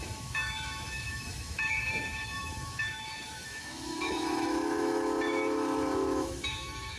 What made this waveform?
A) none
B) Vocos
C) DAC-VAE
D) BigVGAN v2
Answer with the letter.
C